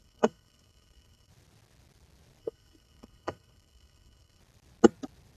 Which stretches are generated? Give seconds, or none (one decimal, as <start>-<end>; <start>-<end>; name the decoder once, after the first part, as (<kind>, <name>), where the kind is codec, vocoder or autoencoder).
0.0-1.3 (codec, SNAC); 2.4-4.4